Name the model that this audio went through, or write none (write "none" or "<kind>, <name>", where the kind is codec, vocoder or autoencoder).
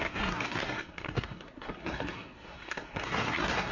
codec, SNAC